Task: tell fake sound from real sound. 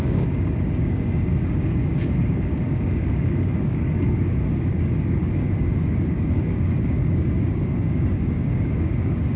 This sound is fake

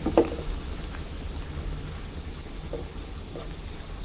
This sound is real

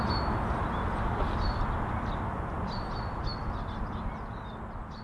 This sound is real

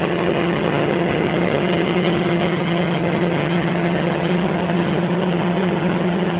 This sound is fake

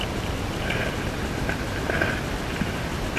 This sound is real